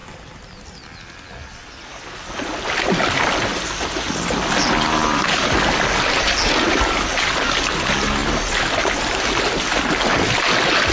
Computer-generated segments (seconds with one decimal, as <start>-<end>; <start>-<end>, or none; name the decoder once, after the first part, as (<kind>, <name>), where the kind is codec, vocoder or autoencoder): none